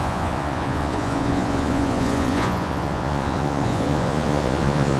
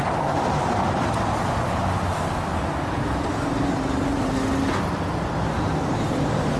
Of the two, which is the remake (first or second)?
first